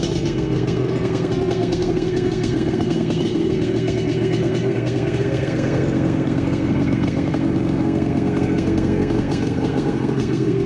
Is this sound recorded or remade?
remade